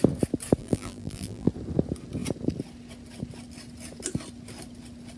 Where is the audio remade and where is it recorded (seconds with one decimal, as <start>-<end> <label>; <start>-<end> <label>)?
0.0-0.6 recorded; 0.6-1.5 remade; 1.5-5.2 recorded